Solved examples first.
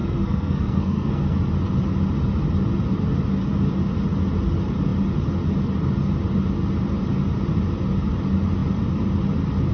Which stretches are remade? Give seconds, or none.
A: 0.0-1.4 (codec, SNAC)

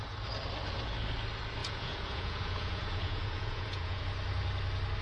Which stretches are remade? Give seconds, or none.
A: 1.6-4.0 (vocoder, Vocos)

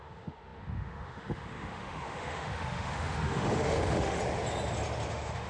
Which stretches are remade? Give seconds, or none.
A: 0.0-4.2 (autoencoder, DAC-VAE); 5.1-5.5

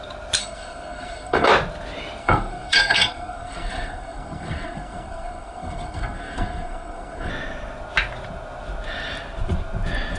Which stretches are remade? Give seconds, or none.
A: 0.4-1.5 (codec, SNAC); 2.2-7.3

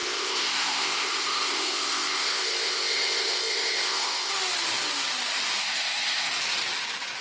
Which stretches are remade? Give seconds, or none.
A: 0.0-4.3 (codec, ZipCodec); 5.6-6.3

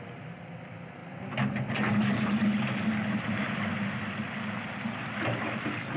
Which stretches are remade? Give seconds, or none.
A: none

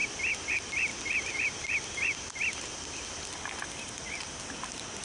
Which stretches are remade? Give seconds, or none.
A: none